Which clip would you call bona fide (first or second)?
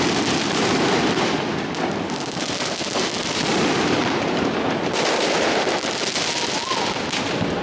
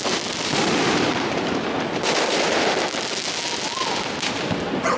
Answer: second